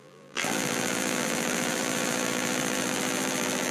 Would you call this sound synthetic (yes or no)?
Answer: yes